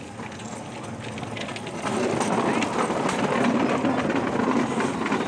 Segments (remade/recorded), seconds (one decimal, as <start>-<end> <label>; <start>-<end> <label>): 0.0-5.3 recorded